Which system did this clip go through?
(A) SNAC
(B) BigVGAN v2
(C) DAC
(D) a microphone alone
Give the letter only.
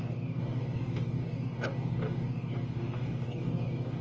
C